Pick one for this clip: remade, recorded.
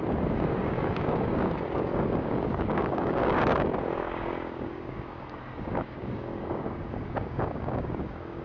remade